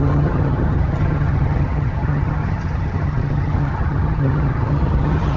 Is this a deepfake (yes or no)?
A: yes